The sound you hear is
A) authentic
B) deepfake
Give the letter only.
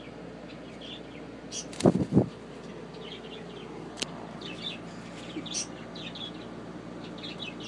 A